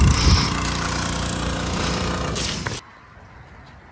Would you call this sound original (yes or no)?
yes